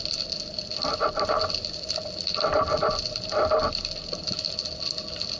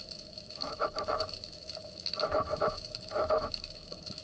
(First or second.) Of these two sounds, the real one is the first